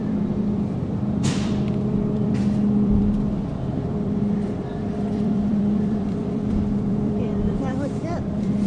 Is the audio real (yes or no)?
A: no